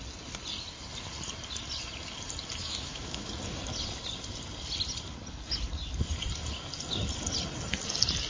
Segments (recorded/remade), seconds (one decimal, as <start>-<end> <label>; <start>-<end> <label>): 0.0-2.6 recorded; 2.6-3.3 remade; 3.3-8.3 recorded